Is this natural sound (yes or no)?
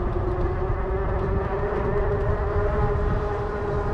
yes